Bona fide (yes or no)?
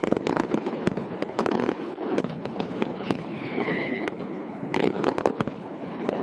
no